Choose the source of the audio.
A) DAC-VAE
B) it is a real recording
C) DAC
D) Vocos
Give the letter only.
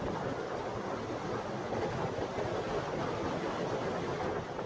B